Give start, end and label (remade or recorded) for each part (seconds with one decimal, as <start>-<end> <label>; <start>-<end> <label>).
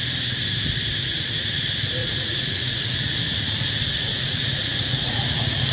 0.0-2.0 recorded; 2.0-5.7 remade